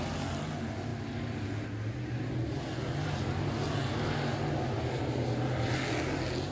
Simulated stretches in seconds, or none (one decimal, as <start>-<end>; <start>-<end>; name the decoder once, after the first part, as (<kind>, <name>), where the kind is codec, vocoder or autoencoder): none